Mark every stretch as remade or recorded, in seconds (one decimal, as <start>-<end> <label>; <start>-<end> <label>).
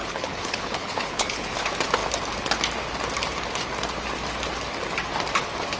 0.0-1.5 remade; 1.5-5.8 recorded